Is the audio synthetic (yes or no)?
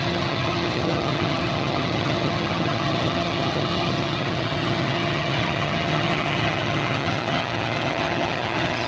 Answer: yes